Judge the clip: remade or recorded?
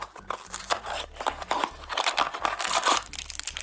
recorded